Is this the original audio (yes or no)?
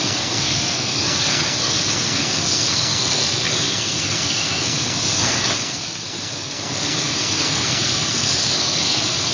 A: no